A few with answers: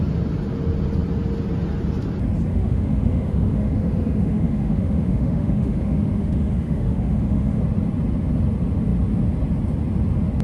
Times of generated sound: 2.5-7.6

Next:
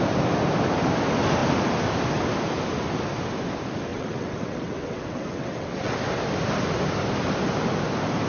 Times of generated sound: 3.9-5.9

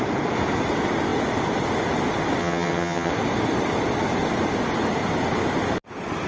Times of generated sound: 2.4-3.1

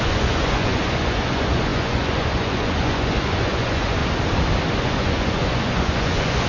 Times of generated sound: 0.0-4.0; 4.8-6.5

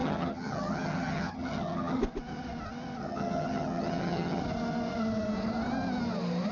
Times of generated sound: 0.0-2.0; 3.0-4.4

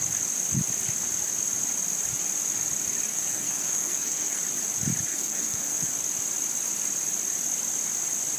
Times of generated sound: 3.1-4.4; 5.1-5.9